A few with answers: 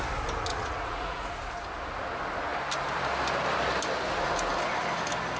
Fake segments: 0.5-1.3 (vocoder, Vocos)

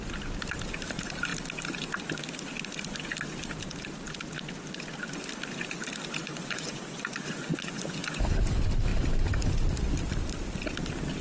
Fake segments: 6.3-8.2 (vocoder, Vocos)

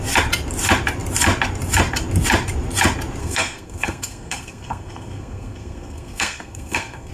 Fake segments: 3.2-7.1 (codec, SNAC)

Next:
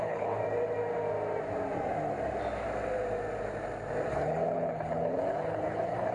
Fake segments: 0.0-0.4 (codec, HILCodec); 4.1-6.1